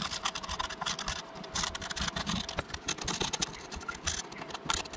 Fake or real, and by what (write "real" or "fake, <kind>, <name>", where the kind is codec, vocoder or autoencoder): real